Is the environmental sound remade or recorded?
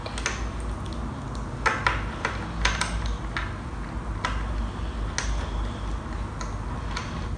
recorded